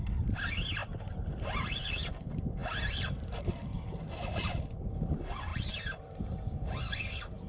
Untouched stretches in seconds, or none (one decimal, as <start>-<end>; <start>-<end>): 0.0-2.6; 3.2-5.5; 6.0-7.5